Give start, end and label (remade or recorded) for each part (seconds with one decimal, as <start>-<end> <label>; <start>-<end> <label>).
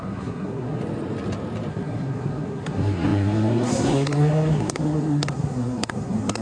0.0-0.8 remade; 0.8-1.7 recorded; 1.7-6.4 remade